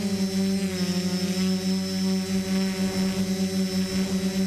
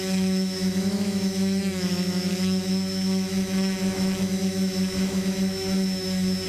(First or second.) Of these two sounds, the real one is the first